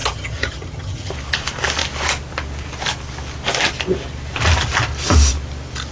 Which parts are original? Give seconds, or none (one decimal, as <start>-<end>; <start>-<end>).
1.1-5.9